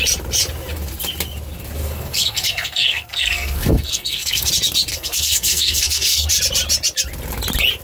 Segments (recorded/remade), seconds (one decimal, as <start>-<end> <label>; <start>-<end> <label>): 0.0-1.8 recorded; 1.8-4.5 remade; 4.5-4.9 recorded; 4.9-6.3 remade; 6.3-7.8 recorded